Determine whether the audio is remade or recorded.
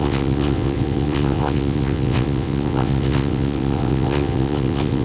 remade